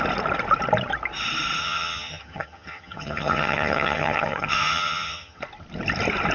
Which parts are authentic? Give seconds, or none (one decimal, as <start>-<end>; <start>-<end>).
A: 0.0-1.6; 5.4-6.3